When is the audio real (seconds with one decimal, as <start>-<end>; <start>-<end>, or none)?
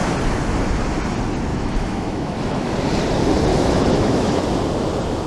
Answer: 0.0-1.5; 2.7-3.5; 4.4-5.3